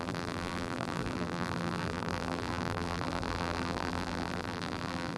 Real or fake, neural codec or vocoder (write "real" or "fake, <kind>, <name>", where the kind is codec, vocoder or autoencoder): fake, vocoder, BigVGAN v2